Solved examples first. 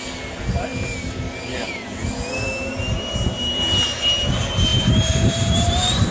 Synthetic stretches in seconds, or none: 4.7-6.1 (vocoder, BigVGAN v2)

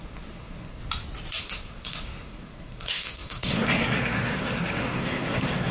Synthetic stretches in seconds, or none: 0.0-0.8 (codec, SNAC); 1.4-5.7

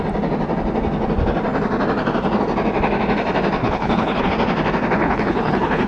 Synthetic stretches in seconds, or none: 3.6-4.3 (codec, HILCodec); 5.0-5.9

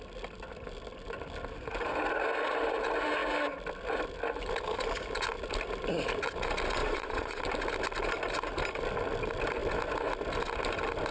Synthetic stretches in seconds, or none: 6.8-7.4 (vocoder, Vocos)

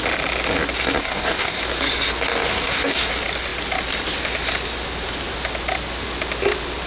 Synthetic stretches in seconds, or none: 1.0-1.6 (codec, DAC); 2.5-3.1

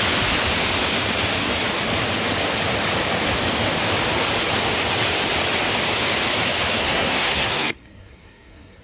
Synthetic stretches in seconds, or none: 6.8-8.8 (codec, SNAC)